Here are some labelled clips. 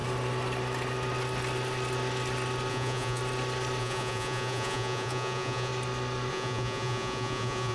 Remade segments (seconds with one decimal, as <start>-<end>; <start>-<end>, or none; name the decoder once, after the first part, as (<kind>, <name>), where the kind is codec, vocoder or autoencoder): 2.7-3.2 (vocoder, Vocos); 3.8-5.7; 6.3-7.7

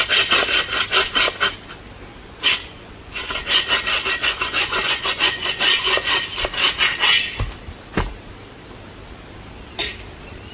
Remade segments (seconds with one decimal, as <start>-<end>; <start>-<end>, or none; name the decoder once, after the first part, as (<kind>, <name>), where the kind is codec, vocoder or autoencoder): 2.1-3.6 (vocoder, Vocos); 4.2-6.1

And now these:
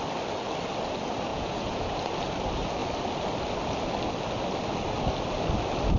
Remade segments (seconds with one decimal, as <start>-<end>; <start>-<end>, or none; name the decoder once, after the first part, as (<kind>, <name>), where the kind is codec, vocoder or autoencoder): 1.3-1.9 (vocoder, Vocos)

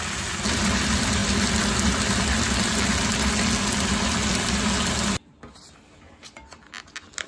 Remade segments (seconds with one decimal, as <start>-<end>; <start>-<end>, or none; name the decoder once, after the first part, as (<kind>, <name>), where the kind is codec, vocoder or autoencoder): none